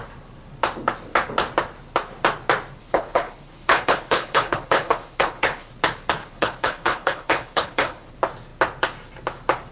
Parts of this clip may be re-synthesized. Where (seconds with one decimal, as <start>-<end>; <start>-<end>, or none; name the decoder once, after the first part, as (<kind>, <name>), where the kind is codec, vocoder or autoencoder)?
2.8-5.7 (codec, HILCodec); 6.2-8.1